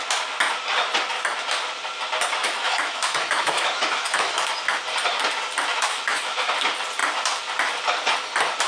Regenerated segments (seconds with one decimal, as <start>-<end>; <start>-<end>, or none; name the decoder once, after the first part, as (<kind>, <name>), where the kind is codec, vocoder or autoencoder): 2.4-4.5 (autoencoder, DAC-VAE); 5.7-6.5